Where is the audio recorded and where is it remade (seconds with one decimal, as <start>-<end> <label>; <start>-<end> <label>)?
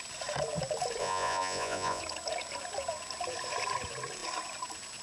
0.0-1.0 recorded; 1.0-2.0 remade; 2.0-5.0 recorded